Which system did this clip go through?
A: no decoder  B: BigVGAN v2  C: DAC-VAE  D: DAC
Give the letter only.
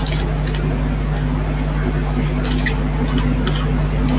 A